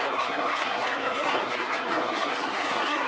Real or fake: fake